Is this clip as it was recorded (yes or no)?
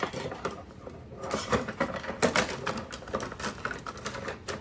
yes